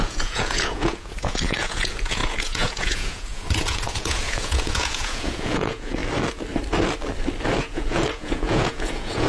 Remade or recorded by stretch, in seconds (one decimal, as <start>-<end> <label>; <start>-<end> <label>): 0.0-6.0 remade; 6.0-7.6 recorded; 7.6-9.3 remade